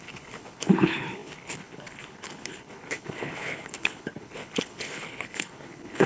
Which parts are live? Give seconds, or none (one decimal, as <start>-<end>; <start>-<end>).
none